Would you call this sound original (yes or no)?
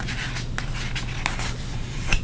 yes